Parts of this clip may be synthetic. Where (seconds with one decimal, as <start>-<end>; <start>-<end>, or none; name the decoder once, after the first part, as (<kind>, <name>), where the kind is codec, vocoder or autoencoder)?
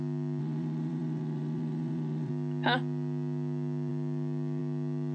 0.4-2.3 (vocoder, WaveNeXt)